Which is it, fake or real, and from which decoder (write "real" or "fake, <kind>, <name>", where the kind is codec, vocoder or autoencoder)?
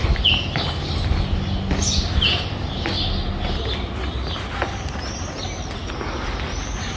real